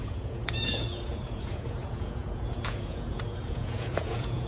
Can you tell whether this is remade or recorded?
remade